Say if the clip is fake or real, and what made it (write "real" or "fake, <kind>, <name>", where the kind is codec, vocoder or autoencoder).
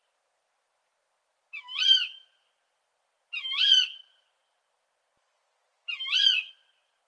real